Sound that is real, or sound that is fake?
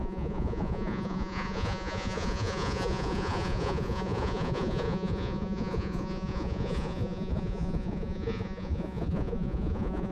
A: fake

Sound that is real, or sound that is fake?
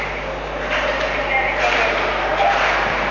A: real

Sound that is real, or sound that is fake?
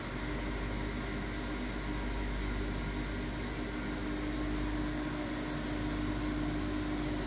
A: real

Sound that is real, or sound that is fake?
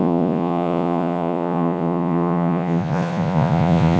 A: fake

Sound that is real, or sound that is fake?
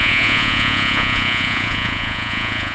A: fake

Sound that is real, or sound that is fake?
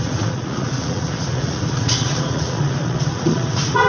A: fake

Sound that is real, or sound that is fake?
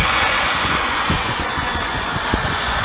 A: fake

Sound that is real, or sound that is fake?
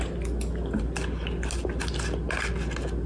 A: real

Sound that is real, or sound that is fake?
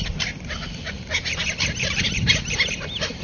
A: real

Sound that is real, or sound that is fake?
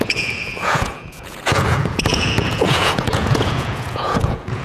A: fake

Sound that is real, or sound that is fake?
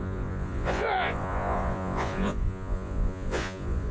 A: fake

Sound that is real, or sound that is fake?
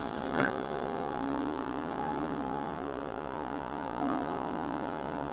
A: fake